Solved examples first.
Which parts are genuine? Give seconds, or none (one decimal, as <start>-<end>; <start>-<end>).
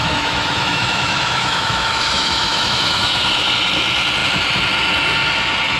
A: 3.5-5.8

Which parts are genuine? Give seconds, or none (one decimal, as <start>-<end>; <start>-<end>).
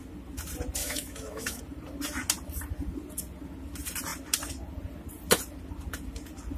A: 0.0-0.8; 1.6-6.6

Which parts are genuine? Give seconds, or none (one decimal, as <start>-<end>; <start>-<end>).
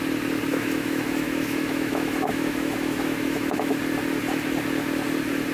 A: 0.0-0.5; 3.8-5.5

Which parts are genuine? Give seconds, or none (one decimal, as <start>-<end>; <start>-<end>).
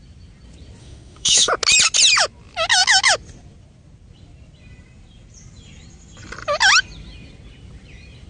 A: 0.0-0.8; 1.5-8.3